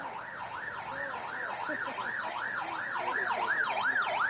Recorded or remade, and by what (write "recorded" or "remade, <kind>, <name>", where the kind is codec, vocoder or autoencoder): recorded